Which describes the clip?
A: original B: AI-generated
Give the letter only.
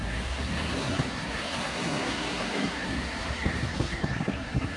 B